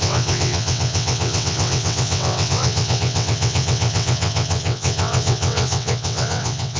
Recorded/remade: remade